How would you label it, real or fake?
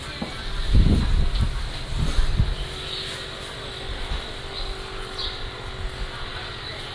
real